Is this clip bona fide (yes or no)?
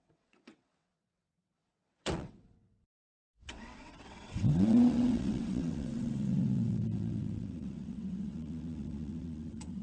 no